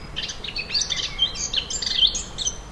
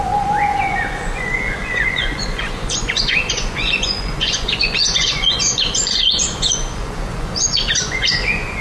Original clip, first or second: first